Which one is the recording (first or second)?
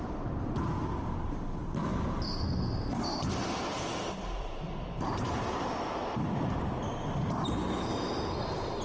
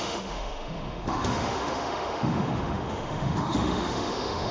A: first